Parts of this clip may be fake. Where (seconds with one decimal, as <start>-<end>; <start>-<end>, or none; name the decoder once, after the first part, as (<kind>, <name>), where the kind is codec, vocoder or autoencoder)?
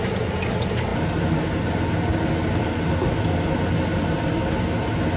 none